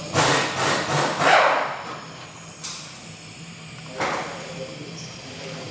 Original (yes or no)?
yes